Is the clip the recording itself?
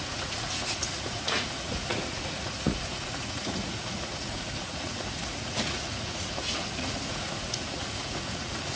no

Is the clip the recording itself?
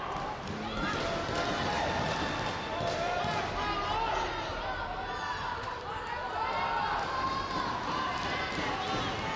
yes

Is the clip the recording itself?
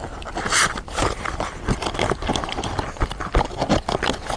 yes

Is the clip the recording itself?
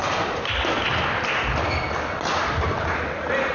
yes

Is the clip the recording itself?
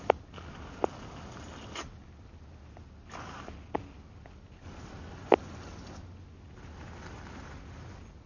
yes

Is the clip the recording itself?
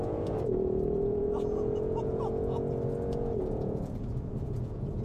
no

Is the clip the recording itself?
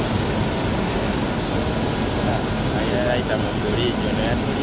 yes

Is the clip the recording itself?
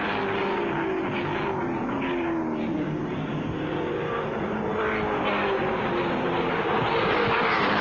yes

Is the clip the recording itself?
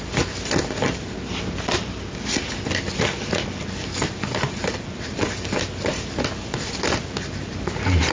yes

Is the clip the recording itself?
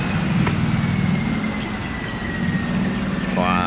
yes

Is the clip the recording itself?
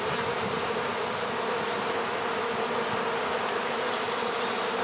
yes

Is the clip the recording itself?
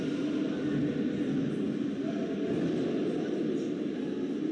yes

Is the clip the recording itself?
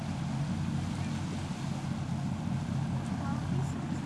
yes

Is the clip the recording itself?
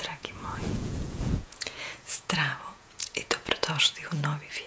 no